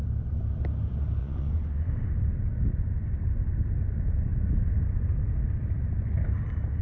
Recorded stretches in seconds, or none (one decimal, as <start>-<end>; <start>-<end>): 0.0-1.2; 1.9-6.8